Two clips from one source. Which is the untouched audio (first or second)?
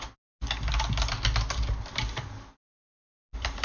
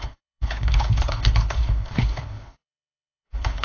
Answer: first